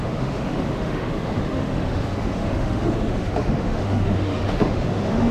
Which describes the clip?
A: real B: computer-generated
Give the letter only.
B